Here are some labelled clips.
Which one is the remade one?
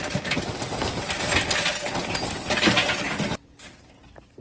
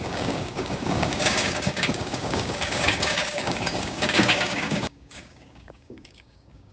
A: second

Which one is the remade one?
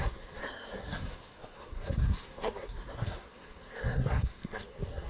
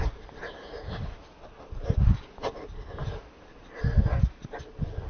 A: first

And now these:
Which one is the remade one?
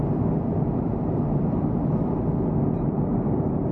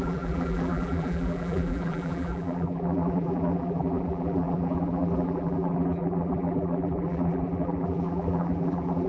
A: second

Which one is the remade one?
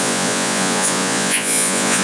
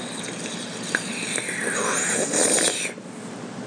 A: first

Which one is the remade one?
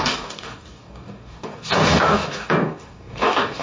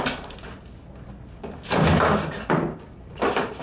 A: first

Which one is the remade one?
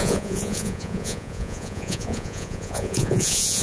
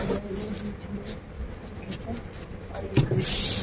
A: first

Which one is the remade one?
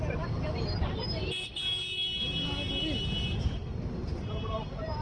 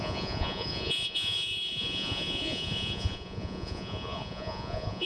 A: second